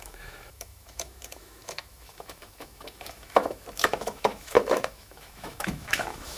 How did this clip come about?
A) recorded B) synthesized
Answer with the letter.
B